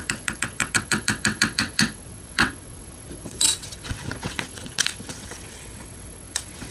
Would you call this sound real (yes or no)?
no